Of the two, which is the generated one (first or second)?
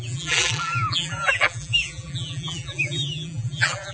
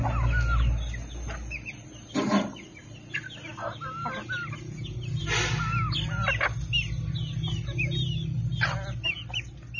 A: first